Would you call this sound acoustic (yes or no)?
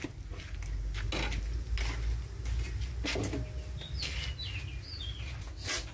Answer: yes